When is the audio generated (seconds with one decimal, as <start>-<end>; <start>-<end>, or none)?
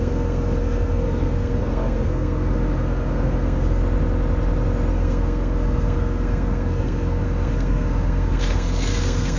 0.0-3.8; 4.9-9.4